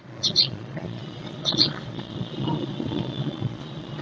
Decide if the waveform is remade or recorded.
remade